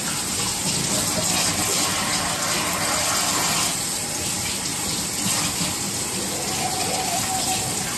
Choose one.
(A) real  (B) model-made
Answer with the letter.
A